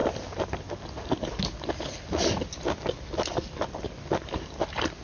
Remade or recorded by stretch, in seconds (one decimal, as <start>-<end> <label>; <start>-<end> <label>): 0.0-5.0 recorded